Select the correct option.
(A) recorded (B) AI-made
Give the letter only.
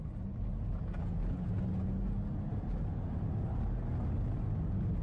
A